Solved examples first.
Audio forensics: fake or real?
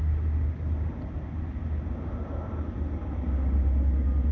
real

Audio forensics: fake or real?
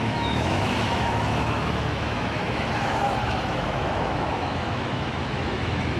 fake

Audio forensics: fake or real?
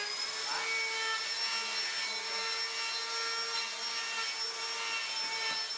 real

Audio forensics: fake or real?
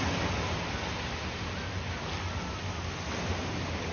real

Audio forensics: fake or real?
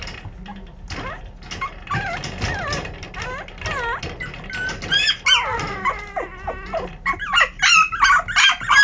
real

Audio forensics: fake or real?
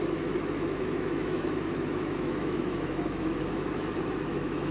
fake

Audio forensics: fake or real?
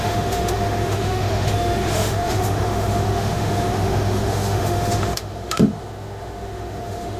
fake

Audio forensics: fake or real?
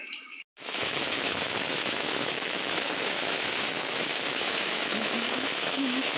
fake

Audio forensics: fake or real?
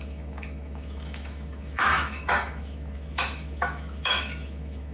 fake